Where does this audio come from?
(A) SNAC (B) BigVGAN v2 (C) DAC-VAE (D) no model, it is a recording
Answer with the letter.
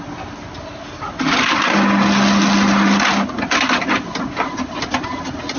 D